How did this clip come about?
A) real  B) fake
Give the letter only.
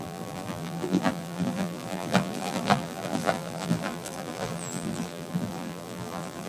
B